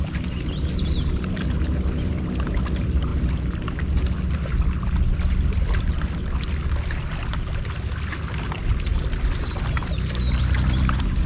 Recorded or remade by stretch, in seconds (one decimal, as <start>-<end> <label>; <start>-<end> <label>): 0.0-11.3 recorded

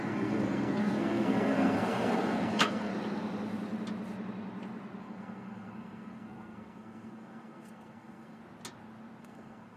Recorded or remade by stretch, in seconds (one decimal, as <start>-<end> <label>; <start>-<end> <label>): 0.0-2.9 remade; 2.9-5.0 recorded; 5.0-8.4 remade; 8.4-9.2 recorded; 9.2-9.8 remade

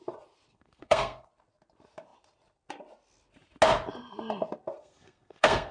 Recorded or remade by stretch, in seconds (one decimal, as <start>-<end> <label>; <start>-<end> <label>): 0.0-0.5 recorded; 0.5-1.3 remade; 1.3-4.8 recorded; 4.8-5.7 remade

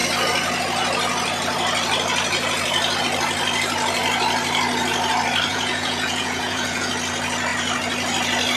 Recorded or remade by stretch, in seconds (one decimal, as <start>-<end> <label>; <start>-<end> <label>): 0.0-5.5 recorded; 5.5-6.9 remade; 6.9-8.6 recorded

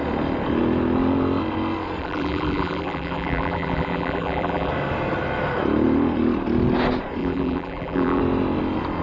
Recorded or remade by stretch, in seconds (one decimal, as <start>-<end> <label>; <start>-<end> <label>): 0.0-2.0 recorded; 2.0-4.7 remade; 4.7-7.2 recorded; 7.2-8.2 remade; 8.2-9.0 recorded

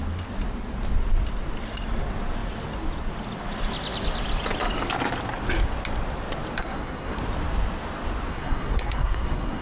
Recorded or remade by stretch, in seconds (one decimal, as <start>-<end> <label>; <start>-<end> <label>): 0.0-6.6 recorded; 6.6-7.2 remade; 7.2-8.3 recorded; 8.3-9.6 remade

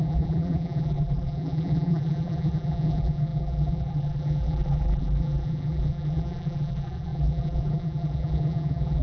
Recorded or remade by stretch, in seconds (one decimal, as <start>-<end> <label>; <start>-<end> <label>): 0.0-9.0 remade

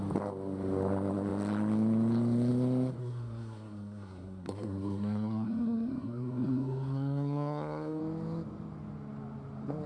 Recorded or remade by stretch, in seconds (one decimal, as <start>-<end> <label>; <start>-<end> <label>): 0.0-3.0 recorded; 3.0-8.0 remade; 8.0-9.9 recorded